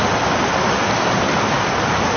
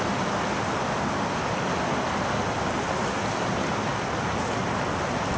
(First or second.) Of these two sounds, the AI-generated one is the first